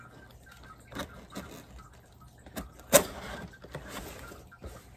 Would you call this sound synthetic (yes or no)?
no